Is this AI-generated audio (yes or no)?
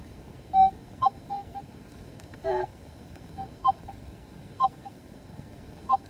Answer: yes